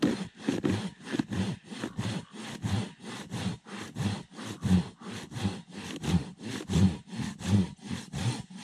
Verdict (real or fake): real